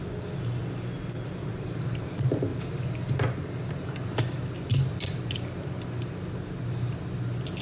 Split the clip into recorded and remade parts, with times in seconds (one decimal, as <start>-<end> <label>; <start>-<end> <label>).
0.0-1.5 recorded; 1.5-2.1 remade; 2.1-7.6 recorded